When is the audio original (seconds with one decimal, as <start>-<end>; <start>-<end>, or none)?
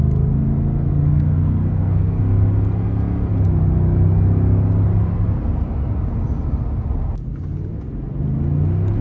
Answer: 0.0-0.9; 2.2-9.0